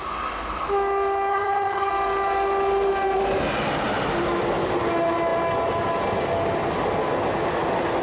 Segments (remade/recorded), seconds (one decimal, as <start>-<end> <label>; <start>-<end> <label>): 0.0-1.3 recorded; 1.3-1.9 remade; 1.9-8.0 recorded